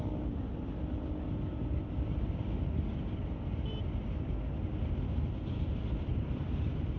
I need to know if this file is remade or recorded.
recorded